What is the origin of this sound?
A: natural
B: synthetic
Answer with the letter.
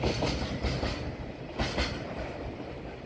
A